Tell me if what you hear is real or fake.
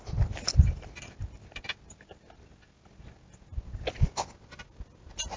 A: real